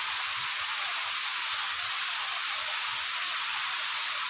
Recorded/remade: recorded